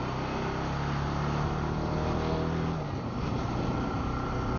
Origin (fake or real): real